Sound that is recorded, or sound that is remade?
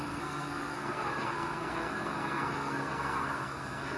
remade